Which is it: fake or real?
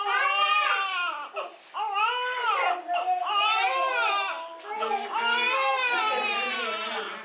real